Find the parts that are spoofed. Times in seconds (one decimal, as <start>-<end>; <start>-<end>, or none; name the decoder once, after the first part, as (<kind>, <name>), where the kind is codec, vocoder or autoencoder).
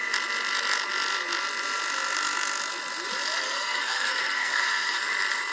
3.4-5.0 (codec, SNAC)